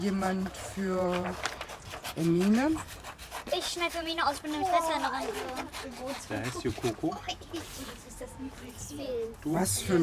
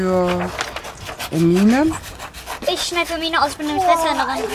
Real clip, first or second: second